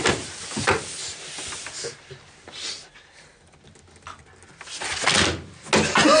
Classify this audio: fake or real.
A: real